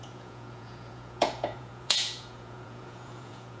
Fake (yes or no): yes